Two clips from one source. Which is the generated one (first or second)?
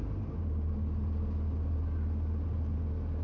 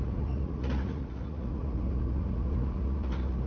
second